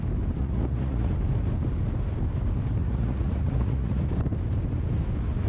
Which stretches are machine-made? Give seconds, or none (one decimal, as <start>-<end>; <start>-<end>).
0.4-1.1; 2.8-4.1